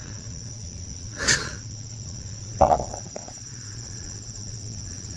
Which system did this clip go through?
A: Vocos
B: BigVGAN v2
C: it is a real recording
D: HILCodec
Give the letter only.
A